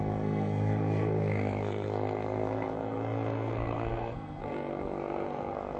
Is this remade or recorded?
remade